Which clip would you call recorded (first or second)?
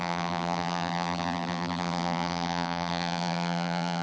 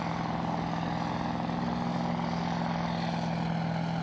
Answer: second